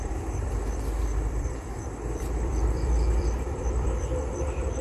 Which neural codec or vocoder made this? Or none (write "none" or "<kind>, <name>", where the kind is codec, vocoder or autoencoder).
vocoder, BigVGAN v2